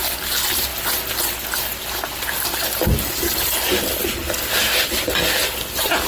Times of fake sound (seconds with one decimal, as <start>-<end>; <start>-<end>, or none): none